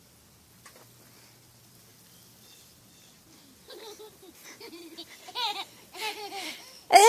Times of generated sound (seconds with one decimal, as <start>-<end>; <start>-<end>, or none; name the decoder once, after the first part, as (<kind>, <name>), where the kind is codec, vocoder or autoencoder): none